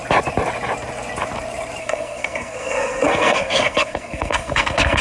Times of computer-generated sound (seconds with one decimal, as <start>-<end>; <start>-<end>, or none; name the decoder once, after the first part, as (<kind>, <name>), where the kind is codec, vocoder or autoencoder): 1.8-5.0 (codec, SNAC)